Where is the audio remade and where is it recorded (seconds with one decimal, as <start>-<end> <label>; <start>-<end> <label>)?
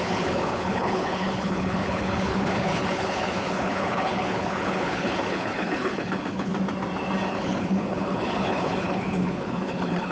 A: 0.0-6.5 remade; 6.5-7.3 recorded; 7.3-10.1 remade